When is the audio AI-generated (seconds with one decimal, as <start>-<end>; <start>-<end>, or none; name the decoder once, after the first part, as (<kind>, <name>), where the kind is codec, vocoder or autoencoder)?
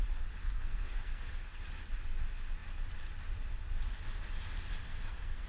0.4-1.6 (codec, SNAC); 4.8-5.5